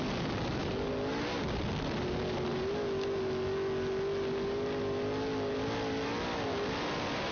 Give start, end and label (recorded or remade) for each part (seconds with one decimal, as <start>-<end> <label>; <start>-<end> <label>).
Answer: 0.0-7.3 recorded

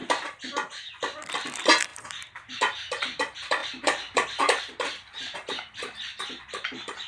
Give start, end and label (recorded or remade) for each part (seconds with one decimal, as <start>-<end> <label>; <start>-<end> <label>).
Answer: 0.0-1.3 recorded; 1.3-1.9 remade; 1.9-2.6 recorded; 2.6-7.1 remade